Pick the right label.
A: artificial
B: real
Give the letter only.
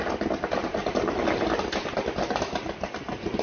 B